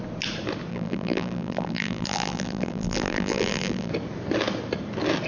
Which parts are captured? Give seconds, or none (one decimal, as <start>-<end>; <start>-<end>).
0.0-0.7; 3.9-5.3